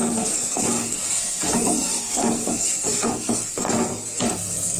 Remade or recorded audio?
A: remade